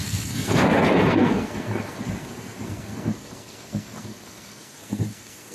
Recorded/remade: remade